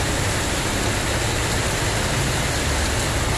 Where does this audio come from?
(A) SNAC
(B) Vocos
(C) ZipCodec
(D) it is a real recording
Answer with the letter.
D